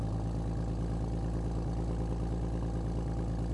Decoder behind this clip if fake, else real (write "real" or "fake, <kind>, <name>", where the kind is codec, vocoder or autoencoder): real